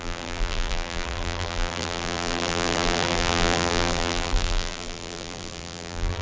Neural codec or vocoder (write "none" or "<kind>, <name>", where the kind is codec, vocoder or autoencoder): vocoder, BigVGAN v2